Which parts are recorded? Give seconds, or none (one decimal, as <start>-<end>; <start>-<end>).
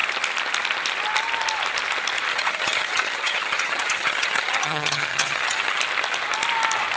0.0-2.3; 5.8-7.0